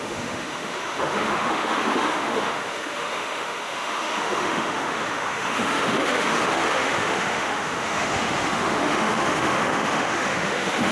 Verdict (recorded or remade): remade